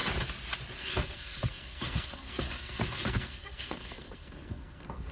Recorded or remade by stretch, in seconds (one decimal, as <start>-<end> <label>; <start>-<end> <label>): 0.0-0.8 recorded; 0.8-5.1 remade